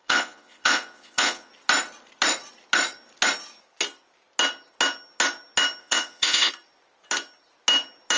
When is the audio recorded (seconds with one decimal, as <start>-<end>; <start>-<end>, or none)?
1.5-5.8; 6.5-8.2